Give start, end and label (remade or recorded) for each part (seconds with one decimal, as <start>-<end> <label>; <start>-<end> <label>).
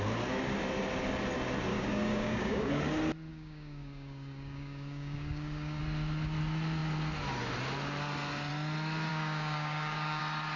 0.0-1.7 recorded; 1.7-2.7 remade; 2.7-3.3 recorded; 3.3-5.8 remade; 5.8-9.1 recorded; 9.1-10.2 remade; 10.2-10.6 recorded